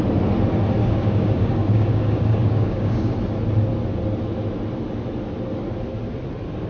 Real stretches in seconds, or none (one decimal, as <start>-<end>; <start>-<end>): 0.0-0.8; 3.1-6.7